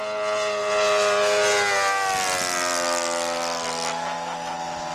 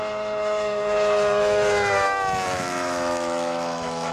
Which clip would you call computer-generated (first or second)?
second